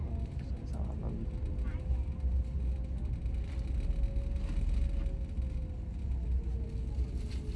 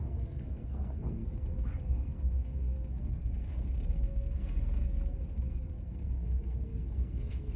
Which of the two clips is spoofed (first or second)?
second